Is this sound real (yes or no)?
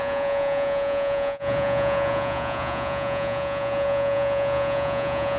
no